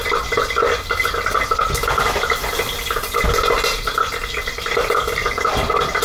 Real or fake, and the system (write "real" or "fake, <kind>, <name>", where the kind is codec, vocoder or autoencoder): real